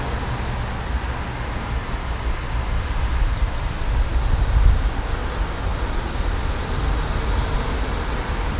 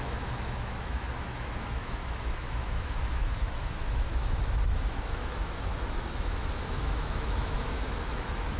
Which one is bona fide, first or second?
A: first